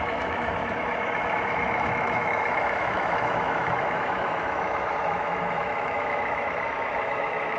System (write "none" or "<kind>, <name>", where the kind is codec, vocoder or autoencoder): autoencoder, DAC-VAE